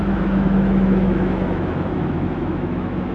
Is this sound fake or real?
fake